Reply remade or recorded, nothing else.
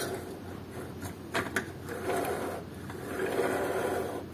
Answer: recorded